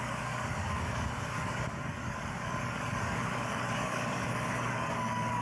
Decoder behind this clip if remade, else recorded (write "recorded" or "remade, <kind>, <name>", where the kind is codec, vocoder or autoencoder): remade, codec, DAC